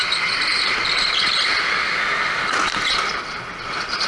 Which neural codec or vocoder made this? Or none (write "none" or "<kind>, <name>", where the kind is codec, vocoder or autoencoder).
none